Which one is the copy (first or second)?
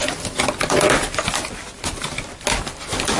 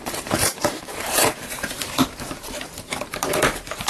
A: second